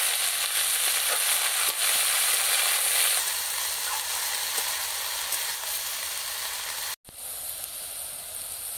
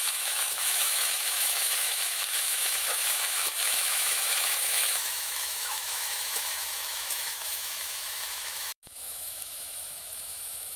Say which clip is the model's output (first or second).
second